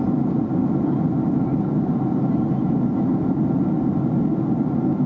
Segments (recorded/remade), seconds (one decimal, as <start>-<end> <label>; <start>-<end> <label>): 0.0-5.1 recorded